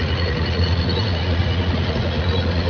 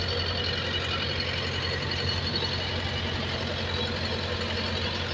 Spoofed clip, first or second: first